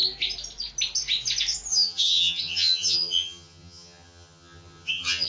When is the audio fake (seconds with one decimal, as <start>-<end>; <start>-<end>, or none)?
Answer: 1.7-5.3